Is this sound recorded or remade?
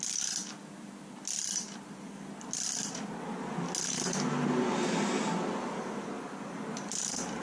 recorded